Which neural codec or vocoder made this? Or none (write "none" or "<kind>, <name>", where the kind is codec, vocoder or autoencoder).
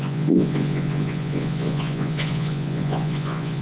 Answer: vocoder, Vocos